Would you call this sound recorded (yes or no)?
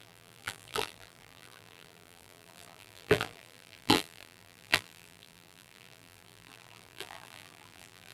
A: no